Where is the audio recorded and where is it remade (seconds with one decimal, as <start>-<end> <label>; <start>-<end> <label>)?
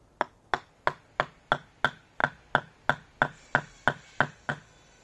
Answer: 0.0-5.0 recorded